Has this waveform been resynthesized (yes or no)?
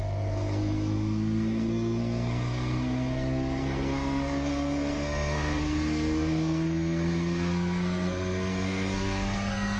yes